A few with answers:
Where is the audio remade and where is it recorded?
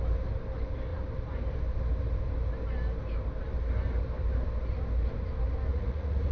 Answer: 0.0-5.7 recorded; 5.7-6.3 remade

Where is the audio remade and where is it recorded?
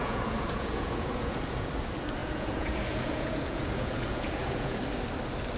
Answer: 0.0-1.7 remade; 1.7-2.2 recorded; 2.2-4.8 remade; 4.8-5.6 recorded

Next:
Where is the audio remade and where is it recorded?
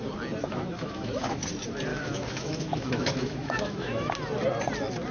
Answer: 0.0-0.4 recorded; 0.4-1.4 remade; 1.4-1.9 recorded; 1.9-4.1 remade; 4.1-5.1 recorded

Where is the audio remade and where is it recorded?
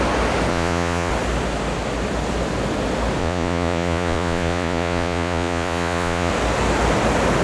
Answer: 0.0-0.5 recorded; 0.5-1.1 remade; 1.1-3.2 recorded; 3.2-6.3 remade; 6.3-7.4 recorded